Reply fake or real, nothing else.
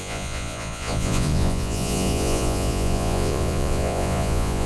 fake